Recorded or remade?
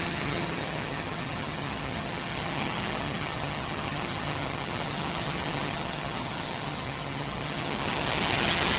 remade